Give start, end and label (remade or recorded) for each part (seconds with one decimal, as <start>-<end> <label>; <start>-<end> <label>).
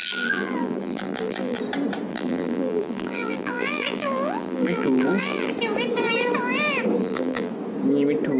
0.0-1.6 remade; 1.6-2.1 recorded; 2.1-5.5 remade; 5.5-7.0 recorded; 7.0-7.5 remade; 7.5-8.4 recorded